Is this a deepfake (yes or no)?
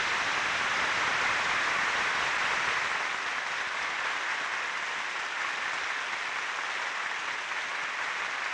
no